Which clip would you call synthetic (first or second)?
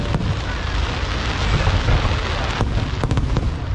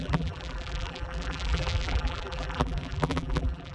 second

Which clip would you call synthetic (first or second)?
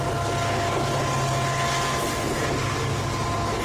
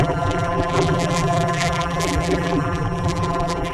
second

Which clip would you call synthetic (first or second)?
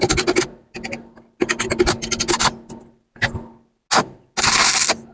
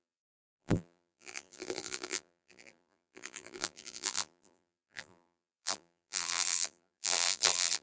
second